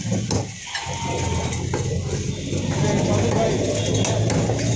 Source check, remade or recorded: recorded